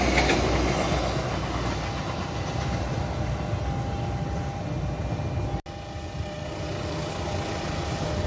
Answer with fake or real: real